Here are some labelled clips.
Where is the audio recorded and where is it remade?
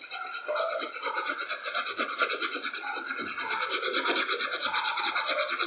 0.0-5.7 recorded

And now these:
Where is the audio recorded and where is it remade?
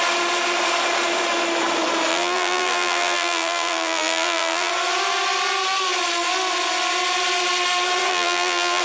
0.0-2.1 recorded; 2.1-4.7 remade; 4.7-8.1 recorded; 8.1-8.8 remade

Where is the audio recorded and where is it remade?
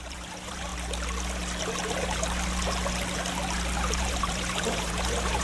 0.0-0.7 remade; 0.7-3.9 recorded; 3.9-5.4 remade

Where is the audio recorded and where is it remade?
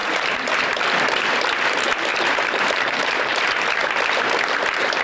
0.0-0.6 remade; 0.6-2.1 recorded; 2.1-3.4 remade; 3.4-5.0 recorded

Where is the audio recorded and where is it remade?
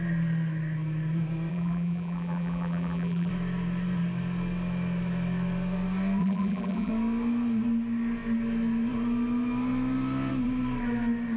0.0-1.5 recorded; 1.5-3.3 remade; 3.3-6.2 recorded; 6.2-6.9 remade; 6.9-11.4 recorded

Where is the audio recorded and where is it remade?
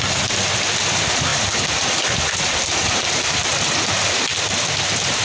0.0-1.3 recorded; 1.3-1.9 remade; 1.9-2.8 recorded; 2.8-3.5 remade; 3.5-4.3 recorded; 4.3-5.2 remade